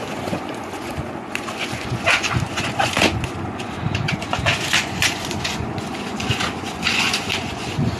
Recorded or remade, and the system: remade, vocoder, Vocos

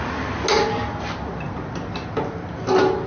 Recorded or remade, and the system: recorded